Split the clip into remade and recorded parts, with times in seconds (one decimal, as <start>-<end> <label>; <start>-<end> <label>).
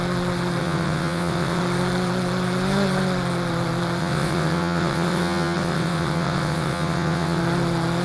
0.0-0.6 recorded; 0.6-1.6 remade; 1.6-4.0 recorded; 4.0-7.4 remade; 7.4-8.0 recorded